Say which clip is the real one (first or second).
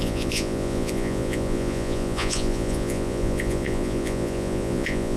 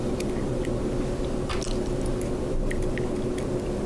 second